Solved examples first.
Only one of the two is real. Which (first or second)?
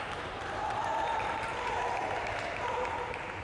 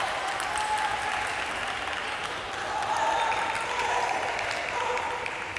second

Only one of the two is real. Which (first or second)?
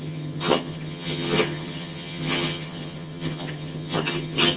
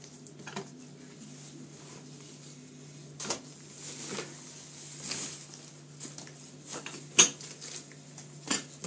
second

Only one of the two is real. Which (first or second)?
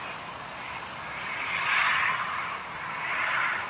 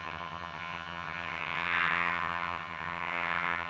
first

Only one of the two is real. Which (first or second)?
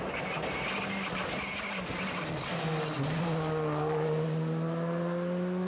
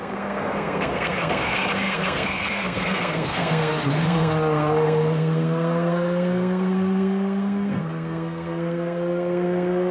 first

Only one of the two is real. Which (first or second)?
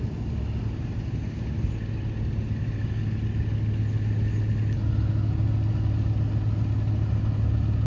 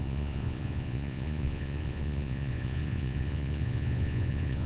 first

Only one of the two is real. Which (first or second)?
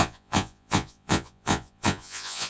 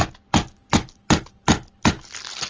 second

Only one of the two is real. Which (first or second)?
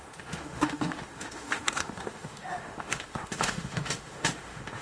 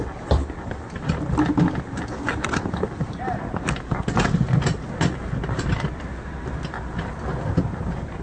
second